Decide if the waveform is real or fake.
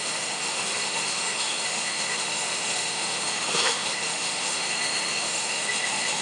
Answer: fake